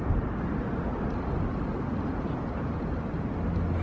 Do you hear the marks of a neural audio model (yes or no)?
no